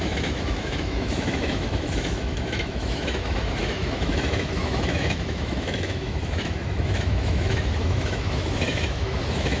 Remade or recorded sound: remade